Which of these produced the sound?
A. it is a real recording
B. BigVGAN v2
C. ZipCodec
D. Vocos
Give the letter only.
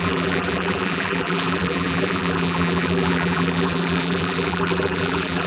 B